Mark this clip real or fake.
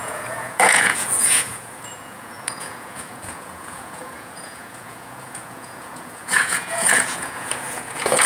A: fake